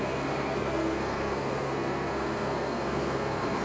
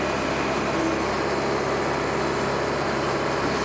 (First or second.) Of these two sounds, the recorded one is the second